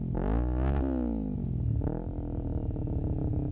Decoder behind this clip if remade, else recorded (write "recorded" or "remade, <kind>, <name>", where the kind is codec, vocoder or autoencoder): recorded